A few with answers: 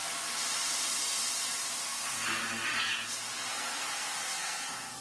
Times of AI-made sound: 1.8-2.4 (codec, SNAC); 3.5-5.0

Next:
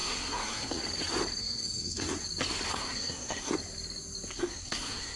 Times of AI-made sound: 0.0-0.8 (codec, SNAC); 1.4-2.1; 2.7-3.5; 4.3-5.2

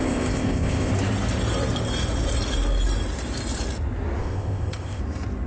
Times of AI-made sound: 0.0-0.9 (codec, ZipCodec); 4.2-5.0

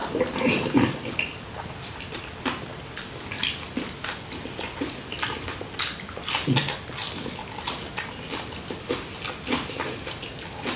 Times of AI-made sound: none

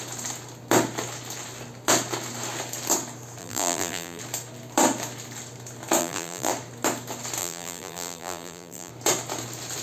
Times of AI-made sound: 3.4-4.2 (vocoder, BigVGAN v2); 6.0-6.5; 7.4-8.9

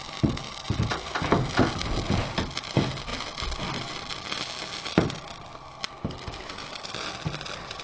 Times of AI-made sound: none